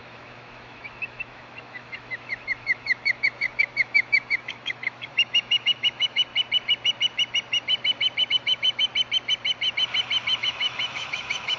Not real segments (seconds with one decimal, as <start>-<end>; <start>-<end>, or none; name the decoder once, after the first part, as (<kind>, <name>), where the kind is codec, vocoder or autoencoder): 0.0-6.3 (autoencoder, DAC-VAE); 8.3-8.9; 10.4-11.6